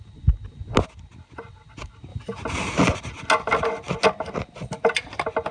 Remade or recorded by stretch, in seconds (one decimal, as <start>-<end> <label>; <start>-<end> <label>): 0.0-5.5 recorded